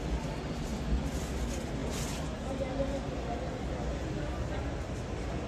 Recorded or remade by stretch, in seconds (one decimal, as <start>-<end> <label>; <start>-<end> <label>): 0.0-5.5 recorded